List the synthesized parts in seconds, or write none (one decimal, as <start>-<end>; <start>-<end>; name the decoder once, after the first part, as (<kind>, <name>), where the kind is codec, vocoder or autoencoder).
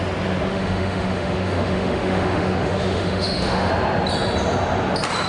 0.5-3.7 (autoencoder, DAC-VAE)